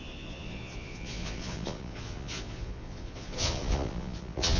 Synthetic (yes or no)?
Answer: yes